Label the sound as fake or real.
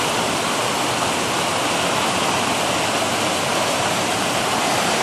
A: real